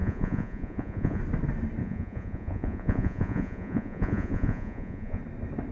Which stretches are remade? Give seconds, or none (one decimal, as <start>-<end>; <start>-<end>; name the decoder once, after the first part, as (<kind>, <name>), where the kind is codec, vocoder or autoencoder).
0.0-1.2 (vocoder, Vocos); 1.8-5.2